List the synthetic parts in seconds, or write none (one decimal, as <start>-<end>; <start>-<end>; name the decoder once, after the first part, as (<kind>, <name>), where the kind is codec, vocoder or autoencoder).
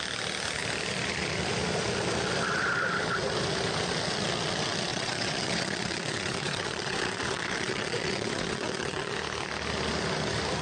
4.9-9.1 (vocoder, WaveNeXt)